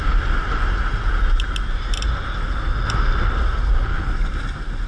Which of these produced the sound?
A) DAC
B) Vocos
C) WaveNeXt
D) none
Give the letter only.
D